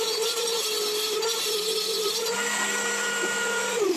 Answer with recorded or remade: recorded